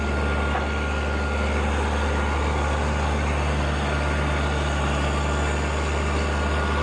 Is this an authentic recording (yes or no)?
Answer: yes